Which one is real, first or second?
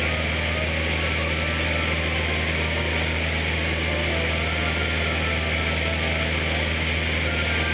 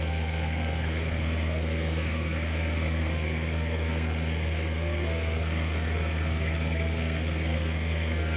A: first